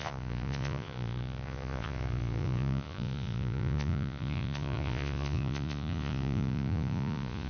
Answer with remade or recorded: remade